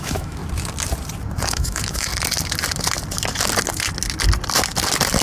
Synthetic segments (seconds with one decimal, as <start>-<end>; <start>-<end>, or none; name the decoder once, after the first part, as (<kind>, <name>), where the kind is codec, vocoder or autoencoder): 0.0-0.4 (autoencoder, DAC-VAE); 1.5-2.1